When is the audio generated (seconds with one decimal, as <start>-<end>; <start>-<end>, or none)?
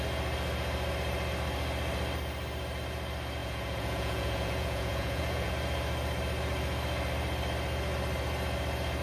3.4-5.5